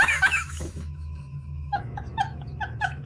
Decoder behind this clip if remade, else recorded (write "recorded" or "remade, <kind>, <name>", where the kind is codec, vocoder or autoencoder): remade, autoencoder, DAC-VAE